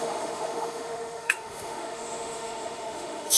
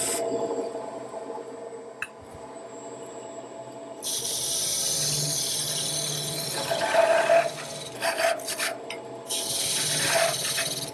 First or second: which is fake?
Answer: first